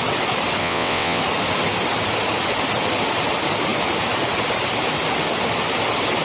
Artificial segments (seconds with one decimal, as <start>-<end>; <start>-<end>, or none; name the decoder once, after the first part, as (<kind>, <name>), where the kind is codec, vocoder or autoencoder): 0.6-1.2 (vocoder, WaveNeXt)